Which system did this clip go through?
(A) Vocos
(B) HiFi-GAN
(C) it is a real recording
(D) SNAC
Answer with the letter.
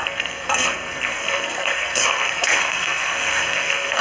D